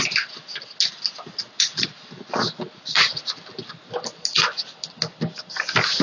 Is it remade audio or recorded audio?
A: recorded